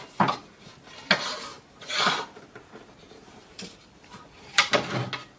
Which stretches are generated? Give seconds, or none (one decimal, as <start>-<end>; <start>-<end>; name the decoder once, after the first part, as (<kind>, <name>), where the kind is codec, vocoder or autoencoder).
1.5-4.7 (vocoder, BigVGAN v2)